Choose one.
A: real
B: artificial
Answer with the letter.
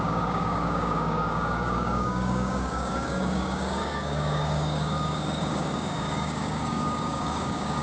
B